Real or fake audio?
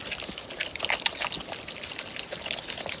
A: real